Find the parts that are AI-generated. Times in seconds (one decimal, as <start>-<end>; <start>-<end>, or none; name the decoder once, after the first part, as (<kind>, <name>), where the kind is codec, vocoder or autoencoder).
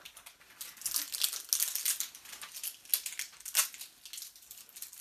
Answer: none